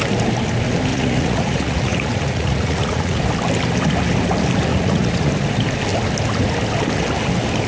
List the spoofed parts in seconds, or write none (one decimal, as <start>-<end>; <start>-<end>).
0.9-3.2; 4.7-5.3